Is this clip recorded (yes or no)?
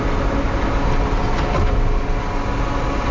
yes